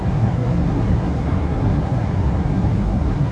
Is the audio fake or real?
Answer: fake